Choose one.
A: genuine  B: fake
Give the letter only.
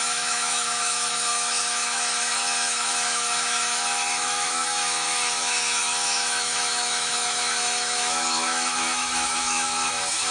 B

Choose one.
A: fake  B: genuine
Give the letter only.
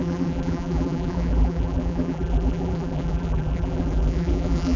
A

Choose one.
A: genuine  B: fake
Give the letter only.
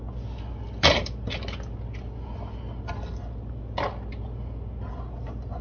A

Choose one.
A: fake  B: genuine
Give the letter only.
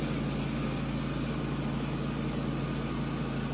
B